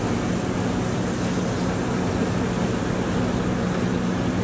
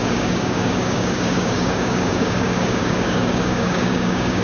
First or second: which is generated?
second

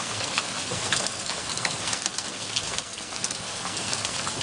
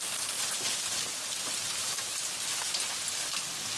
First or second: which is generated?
first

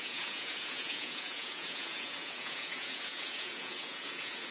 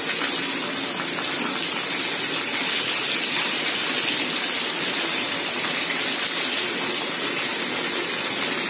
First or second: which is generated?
first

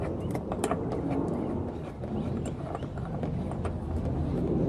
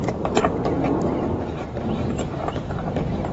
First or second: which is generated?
second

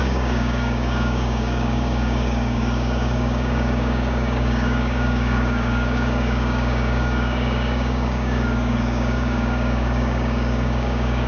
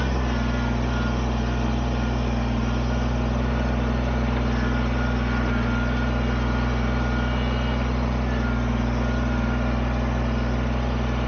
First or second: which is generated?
first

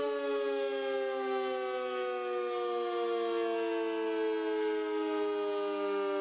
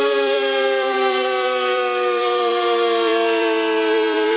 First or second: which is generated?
second